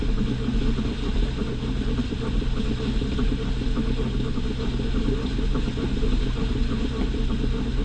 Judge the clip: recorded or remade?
recorded